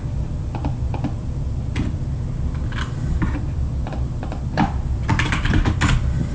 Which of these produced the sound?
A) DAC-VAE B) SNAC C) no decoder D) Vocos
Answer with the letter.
C